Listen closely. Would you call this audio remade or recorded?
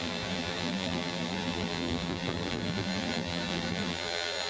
remade